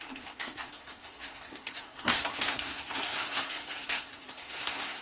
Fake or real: fake